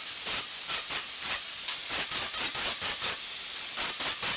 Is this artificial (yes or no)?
no